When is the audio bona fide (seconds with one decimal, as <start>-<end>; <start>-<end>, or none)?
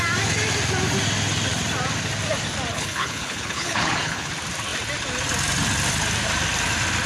0.0-2.7; 4.3-7.1